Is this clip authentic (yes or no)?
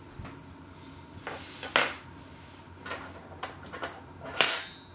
yes